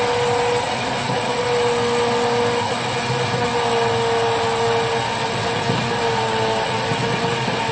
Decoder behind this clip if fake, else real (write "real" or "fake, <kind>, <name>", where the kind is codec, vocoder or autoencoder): real